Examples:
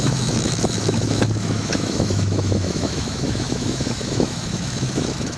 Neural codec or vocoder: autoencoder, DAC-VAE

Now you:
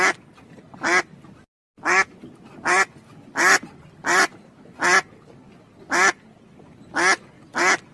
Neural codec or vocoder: none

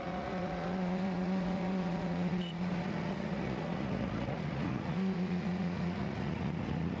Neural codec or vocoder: vocoder, Vocos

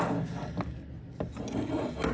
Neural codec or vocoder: none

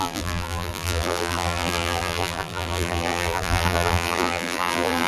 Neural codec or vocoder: vocoder, BigVGAN v2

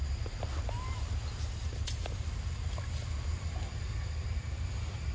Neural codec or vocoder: none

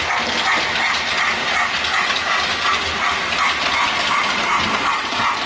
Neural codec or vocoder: none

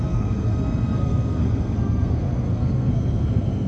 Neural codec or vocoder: codec, SNAC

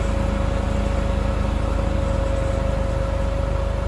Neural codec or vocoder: none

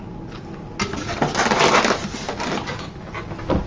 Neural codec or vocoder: none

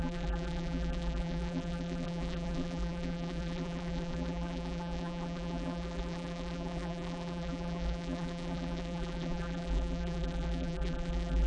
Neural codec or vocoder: vocoder, BigVGAN v2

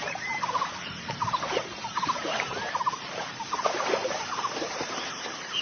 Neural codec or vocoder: vocoder, BigVGAN v2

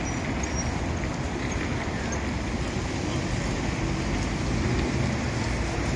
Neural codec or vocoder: none